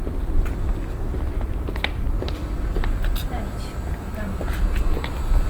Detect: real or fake real